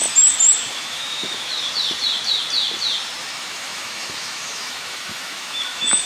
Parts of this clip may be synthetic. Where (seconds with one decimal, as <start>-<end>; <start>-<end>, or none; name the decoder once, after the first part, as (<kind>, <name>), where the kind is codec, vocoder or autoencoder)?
0.7-1.5 (autoencoder, DAC-VAE); 3.2-6.0